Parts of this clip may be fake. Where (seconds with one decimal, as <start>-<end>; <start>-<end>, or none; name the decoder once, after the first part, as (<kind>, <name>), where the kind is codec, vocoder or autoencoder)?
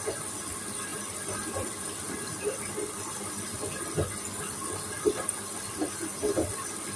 none